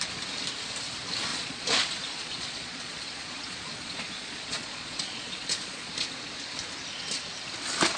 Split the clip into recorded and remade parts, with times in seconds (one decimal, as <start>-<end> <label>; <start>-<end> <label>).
0.0-1.3 recorded; 1.3-5.9 remade; 5.9-8.0 recorded